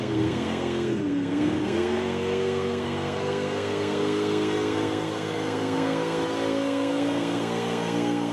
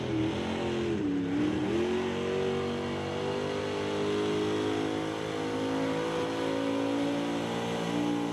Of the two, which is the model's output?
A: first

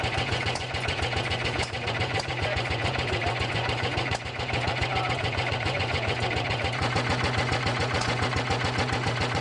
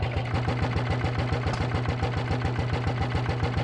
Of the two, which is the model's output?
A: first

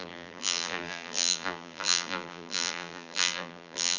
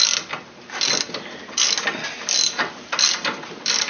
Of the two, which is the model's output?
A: first